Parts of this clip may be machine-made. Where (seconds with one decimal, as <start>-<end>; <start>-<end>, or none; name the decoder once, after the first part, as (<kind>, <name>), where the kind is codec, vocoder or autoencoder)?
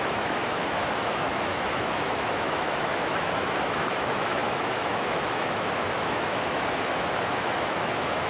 0.0-8.3 (autoencoder, DAC-VAE)